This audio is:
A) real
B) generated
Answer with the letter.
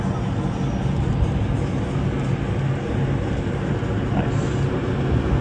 A